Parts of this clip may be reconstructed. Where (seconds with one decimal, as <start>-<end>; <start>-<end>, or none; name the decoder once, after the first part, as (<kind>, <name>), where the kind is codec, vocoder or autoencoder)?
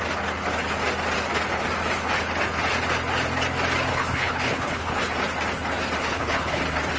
3.9-5.0 (codec, HILCodec); 6.0-6.6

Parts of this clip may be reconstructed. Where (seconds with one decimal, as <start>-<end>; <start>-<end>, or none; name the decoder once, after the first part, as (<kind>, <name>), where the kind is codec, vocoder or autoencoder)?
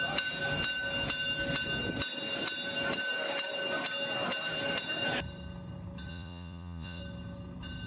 6.1-7.0 (vocoder, Vocos)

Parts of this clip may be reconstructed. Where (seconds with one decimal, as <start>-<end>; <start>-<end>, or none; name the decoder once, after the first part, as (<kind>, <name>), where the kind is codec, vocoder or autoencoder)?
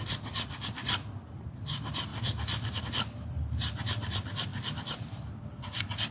none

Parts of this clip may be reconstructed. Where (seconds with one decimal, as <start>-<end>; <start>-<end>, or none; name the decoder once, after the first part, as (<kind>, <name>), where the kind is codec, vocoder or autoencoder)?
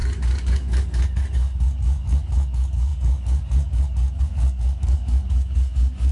0.0-6.1 (codec, DAC)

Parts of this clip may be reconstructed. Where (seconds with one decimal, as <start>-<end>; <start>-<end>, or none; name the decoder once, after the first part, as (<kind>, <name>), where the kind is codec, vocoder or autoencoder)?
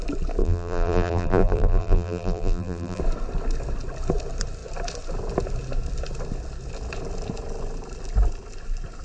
0.4-3.0 (vocoder, BigVGAN v2)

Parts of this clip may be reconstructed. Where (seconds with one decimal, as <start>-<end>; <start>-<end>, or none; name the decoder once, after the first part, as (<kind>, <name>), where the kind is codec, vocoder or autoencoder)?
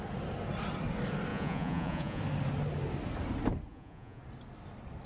1.3-2.2 (vocoder, Vocos); 3.7-4.2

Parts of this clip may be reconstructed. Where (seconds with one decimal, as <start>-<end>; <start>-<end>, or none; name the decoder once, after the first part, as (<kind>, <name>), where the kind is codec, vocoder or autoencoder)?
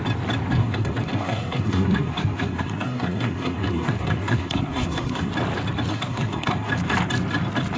0.6-5.3 (codec, SNAC); 5.9-6.7